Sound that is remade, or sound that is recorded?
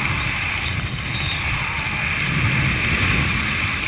recorded